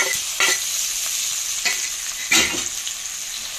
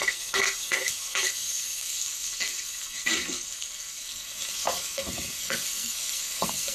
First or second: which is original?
first